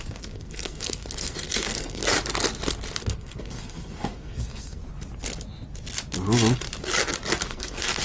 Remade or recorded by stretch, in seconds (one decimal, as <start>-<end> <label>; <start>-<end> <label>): 0.0-2.0 remade; 2.0-3.0 recorded; 3.0-4.8 remade; 4.8-7.4 recorded; 7.4-8.0 remade